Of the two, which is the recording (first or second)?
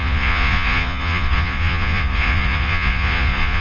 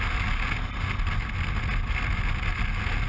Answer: second